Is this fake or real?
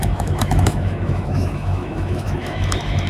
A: fake